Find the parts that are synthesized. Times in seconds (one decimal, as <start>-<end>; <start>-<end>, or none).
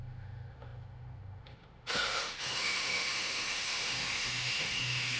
0.0-5.2